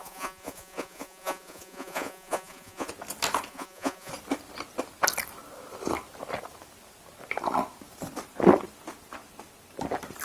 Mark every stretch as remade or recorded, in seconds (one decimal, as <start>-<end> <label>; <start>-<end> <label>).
0.0-2.9 remade; 2.9-3.5 recorded; 3.5-4.1 remade; 4.1-10.2 recorded